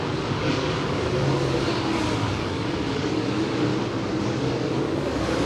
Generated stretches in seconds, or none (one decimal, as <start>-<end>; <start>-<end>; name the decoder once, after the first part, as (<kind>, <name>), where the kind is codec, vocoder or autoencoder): 0.0-3.7 (codec, DAC); 4.2-5.5